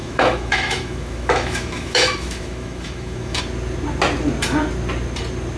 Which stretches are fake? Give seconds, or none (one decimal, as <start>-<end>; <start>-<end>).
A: 0.0-3.4